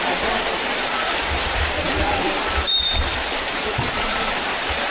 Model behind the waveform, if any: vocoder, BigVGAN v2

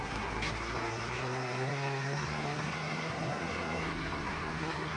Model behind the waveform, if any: codec, SNAC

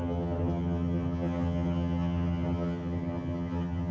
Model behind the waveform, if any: vocoder, HiFi-GAN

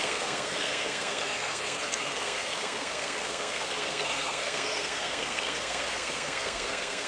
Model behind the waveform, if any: codec, SNAC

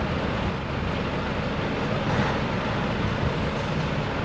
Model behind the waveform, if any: none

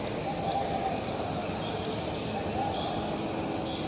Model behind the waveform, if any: none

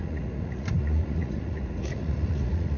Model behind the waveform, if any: vocoder, Vocos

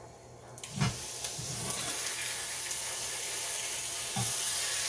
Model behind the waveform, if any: none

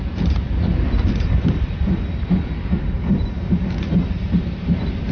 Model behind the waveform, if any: none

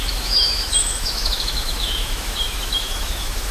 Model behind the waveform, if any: autoencoder, DAC-VAE